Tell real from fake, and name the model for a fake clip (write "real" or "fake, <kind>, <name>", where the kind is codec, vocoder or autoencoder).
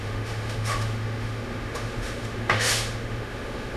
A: fake, autoencoder, DAC-VAE